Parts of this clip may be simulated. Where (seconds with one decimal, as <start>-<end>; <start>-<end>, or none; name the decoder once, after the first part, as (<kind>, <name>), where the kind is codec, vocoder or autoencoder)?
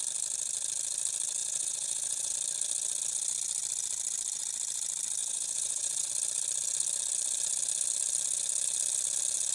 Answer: 1.4-2.3 (vocoder, Vocos); 5.2-6.1